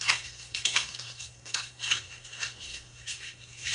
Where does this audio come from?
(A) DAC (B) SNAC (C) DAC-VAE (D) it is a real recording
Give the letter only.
B